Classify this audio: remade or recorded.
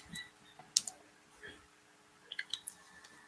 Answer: recorded